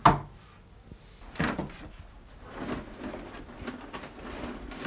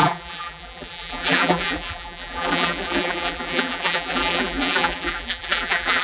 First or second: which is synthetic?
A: second